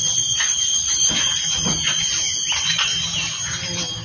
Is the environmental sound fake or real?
real